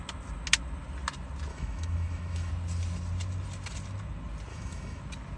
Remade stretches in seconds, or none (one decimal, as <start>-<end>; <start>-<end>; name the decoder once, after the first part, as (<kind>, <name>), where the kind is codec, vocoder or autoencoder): 1.5-2.5 (autoencoder, DAC-VAE); 4.5-5.0